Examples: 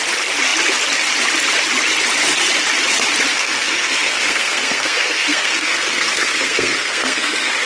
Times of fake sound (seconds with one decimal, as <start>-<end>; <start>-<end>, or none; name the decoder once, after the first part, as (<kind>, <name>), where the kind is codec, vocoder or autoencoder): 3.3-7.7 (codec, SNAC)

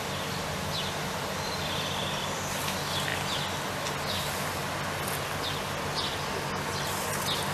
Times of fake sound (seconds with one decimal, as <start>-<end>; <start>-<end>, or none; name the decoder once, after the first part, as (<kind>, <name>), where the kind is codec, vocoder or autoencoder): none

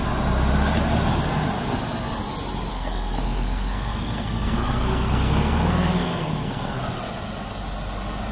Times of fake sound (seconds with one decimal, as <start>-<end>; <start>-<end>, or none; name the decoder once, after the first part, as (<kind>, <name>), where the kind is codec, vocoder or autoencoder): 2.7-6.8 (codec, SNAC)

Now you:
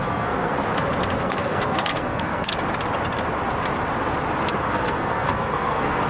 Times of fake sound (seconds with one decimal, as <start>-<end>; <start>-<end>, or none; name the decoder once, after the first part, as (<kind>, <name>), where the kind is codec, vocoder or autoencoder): 0.0-0.6 (codec, SNAC); 1.2-2.5; 4.5-6.1

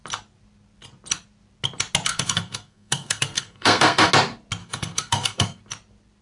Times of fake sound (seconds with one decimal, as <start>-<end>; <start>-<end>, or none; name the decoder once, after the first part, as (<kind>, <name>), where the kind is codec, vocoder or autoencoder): 2.1-4.1 (codec, SNAC); 4.6-5.6

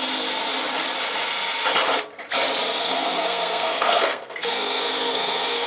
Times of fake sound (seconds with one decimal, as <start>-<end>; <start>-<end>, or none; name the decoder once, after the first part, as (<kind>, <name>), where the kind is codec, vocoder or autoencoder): 2.8-5.7 (codec, SNAC)

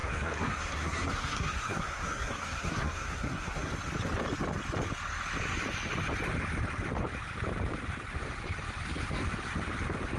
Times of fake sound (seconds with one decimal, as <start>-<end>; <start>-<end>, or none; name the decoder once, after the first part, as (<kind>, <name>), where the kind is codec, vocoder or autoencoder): 0.0-3.7 (codec, SNAC)